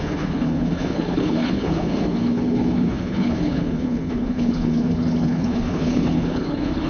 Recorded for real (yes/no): no